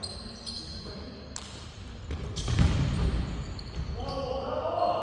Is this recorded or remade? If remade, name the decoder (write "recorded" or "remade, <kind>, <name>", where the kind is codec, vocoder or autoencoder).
recorded